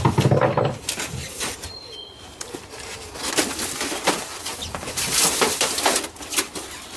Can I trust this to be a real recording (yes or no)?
yes